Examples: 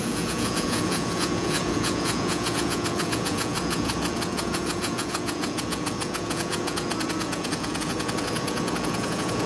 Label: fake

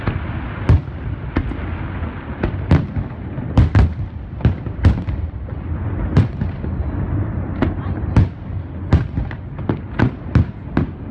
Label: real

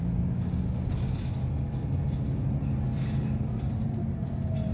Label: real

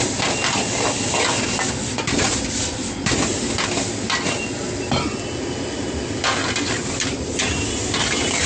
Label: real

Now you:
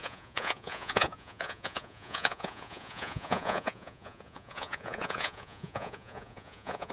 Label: fake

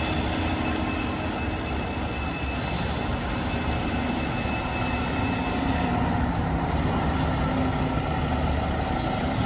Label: real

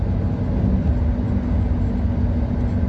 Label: real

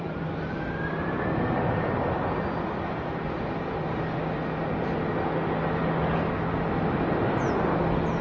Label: real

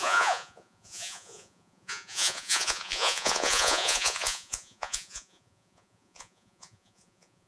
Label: fake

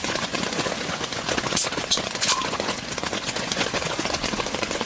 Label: fake